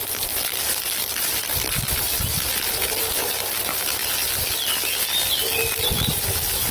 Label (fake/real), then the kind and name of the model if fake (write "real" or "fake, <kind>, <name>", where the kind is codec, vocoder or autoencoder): real